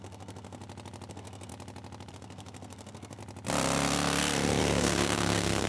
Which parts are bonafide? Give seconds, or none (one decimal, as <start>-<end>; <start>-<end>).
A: 0.6-1.1; 1.5-2.1; 3.2-4.6